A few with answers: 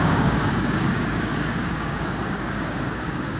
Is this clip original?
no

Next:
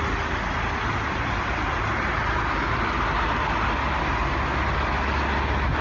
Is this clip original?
yes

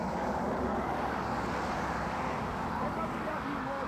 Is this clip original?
no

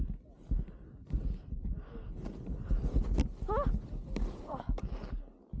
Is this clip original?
yes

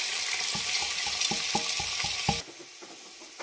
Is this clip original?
yes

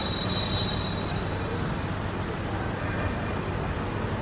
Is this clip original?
yes